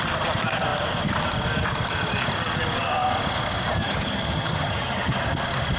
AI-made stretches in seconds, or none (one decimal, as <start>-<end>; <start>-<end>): 3.8-5.2